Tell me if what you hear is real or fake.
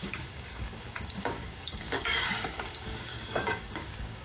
fake